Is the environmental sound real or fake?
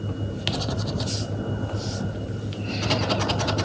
real